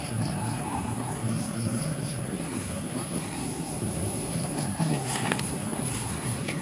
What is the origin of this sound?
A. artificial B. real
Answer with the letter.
A